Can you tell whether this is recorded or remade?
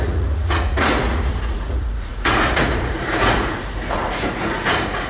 remade